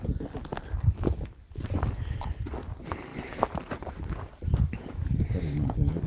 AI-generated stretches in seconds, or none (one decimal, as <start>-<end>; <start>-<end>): 3.1-5.4